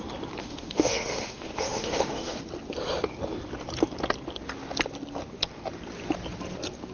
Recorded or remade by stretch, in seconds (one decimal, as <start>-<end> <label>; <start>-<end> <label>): 0.0-0.4 recorded; 0.4-2.4 remade; 2.4-6.9 recorded